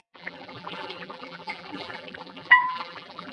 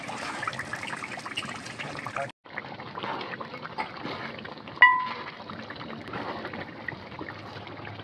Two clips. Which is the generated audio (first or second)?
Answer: first